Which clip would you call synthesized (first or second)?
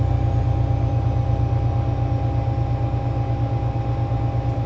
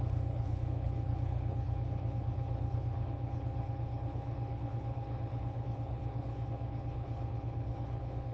second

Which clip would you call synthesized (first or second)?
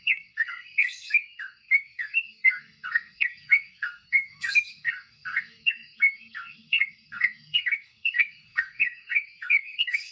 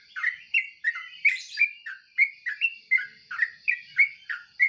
first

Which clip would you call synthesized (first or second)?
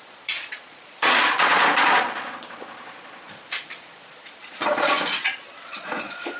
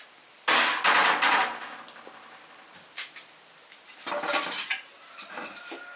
first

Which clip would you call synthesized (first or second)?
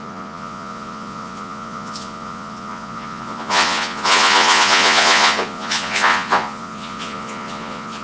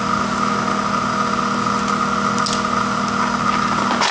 first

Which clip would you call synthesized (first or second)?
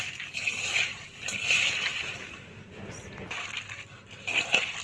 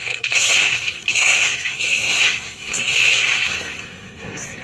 second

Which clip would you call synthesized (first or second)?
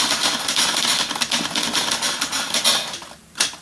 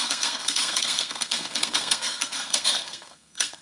second